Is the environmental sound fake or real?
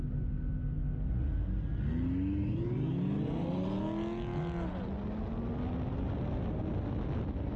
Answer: real